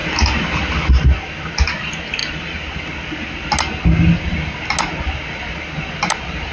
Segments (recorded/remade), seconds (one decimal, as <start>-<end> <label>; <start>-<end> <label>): 0.0-6.5 recorded